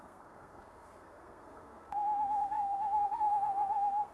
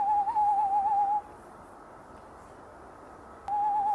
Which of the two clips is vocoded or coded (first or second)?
first